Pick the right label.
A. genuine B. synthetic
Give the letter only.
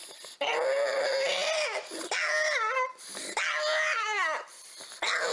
A